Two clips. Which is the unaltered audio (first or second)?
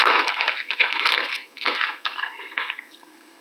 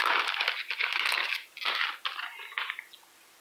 second